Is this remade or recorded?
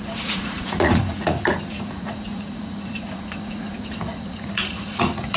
remade